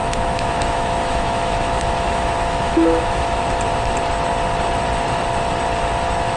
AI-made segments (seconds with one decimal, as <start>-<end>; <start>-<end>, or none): 0.0-3.4